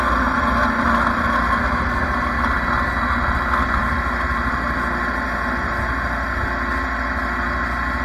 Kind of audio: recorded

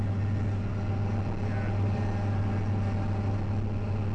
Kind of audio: recorded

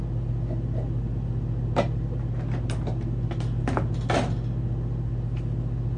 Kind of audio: recorded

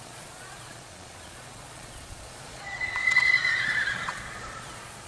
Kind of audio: remade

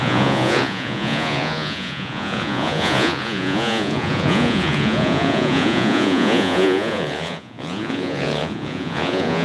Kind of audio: remade